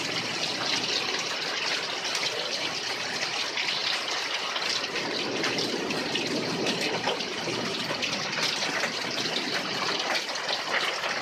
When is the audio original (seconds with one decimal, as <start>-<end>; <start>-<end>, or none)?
0.0-11.2